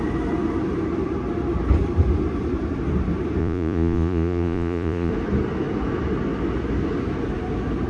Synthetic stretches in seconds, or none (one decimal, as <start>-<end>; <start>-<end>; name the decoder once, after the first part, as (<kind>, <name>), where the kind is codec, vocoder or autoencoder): 3.4-5.1 (vocoder, Vocos)